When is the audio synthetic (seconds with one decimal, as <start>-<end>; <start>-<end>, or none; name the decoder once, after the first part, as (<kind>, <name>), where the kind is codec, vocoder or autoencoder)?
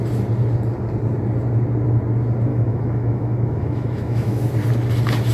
2.5-4.4 (autoencoder, DAC-VAE)